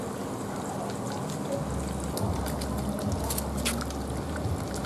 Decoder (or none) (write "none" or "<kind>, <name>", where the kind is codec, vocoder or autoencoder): none